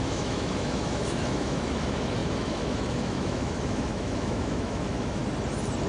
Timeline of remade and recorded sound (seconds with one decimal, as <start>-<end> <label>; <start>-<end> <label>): 0.0-5.2 remade; 5.2-5.9 recorded

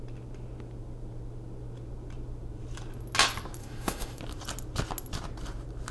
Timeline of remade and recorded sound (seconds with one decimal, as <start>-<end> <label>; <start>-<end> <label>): 0.0-3.6 recorded; 3.6-4.2 remade; 4.2-5.9 recorded